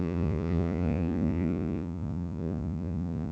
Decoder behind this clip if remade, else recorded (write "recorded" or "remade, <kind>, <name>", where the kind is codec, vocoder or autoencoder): remade, vocoder, Vocos